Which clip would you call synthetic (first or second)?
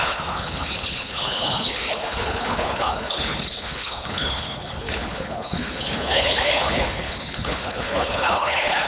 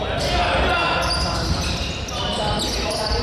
first